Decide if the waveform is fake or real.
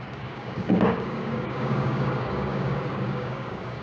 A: fake